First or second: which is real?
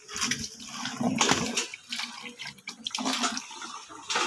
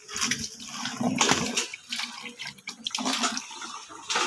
first